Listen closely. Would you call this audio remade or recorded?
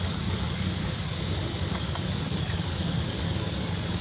remade